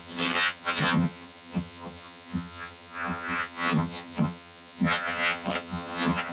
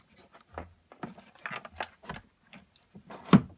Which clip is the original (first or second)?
second